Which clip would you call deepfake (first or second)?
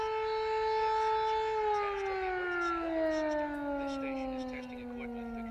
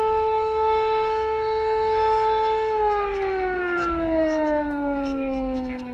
second